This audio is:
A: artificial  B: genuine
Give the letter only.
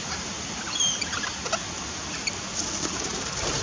B